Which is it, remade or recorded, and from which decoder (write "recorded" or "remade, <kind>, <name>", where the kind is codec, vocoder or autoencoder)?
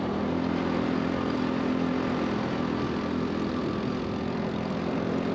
recorded